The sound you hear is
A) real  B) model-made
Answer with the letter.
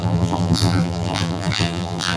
B